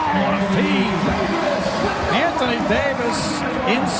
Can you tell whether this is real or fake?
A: real